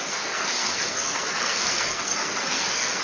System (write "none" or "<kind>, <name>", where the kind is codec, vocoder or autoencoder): codec, SNAC